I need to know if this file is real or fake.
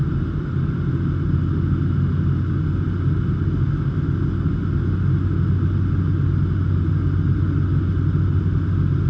real